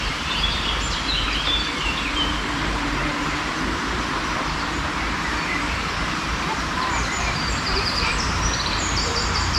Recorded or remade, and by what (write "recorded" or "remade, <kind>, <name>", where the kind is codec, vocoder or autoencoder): remade, vocoder, BigVGAN v2